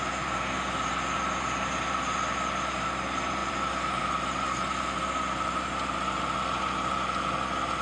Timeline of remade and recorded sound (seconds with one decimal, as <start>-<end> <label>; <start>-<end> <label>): 0.0-3.4 recorded; 3.4-4.1 remade; 4.1-7.8 recorded